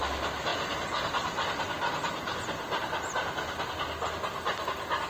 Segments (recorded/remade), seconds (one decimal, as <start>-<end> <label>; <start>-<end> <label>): 0.0-5.1 recorded